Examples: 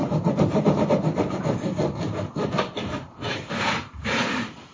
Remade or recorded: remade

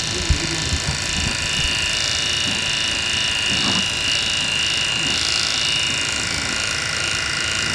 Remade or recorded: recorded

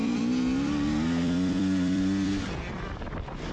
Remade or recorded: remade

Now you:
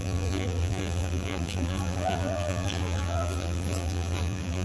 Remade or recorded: remade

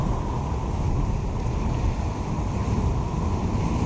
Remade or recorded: recorded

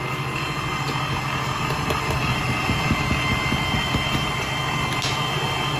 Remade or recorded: recorded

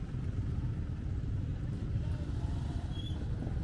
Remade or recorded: remade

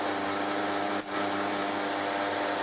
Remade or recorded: remade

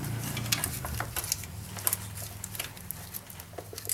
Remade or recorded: recorded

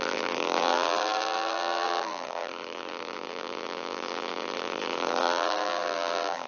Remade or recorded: remade